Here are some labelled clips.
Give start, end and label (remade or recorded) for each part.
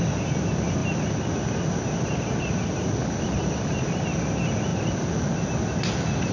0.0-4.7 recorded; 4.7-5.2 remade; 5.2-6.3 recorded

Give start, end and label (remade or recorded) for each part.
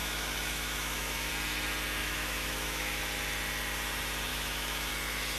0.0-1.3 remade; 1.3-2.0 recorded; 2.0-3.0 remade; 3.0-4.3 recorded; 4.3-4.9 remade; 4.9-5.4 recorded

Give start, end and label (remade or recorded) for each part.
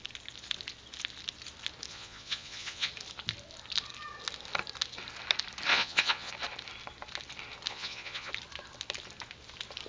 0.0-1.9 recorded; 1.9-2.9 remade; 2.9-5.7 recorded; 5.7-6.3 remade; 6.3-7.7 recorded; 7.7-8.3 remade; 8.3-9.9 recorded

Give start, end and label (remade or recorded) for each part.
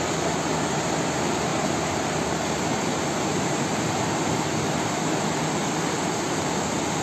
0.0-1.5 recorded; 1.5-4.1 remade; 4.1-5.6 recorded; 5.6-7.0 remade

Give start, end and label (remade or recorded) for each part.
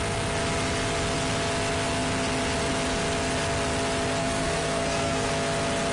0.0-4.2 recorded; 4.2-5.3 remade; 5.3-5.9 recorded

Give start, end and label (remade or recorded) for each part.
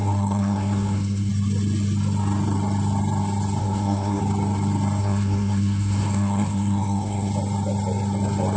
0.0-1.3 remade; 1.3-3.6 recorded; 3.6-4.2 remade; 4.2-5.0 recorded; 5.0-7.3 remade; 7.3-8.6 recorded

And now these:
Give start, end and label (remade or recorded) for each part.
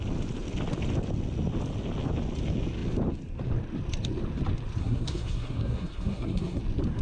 0.0-4.8 recorded; 4.8-6.6 remade; 6.6-7.0 recorded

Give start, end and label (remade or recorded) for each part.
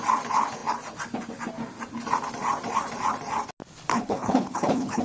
0.0-3.9 recorded; 3.9-5.0 remade